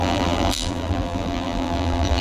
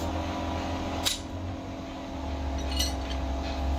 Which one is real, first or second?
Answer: second